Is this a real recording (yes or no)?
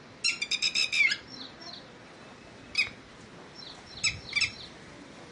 yes